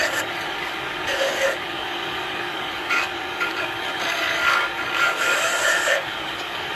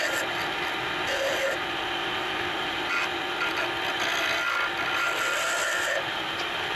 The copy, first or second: first